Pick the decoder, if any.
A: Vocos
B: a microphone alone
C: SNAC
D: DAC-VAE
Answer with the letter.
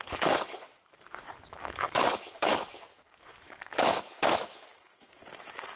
D